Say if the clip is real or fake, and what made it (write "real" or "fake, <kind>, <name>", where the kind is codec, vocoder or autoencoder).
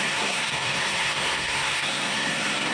fake, codec, SNAC